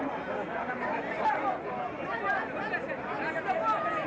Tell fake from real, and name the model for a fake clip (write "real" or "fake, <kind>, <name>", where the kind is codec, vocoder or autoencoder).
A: real